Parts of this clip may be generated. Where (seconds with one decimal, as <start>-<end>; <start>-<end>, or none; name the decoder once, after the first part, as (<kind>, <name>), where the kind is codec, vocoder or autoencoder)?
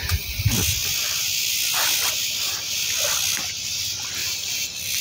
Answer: 4.2-5.0 (vocoder, BigVGAN v2)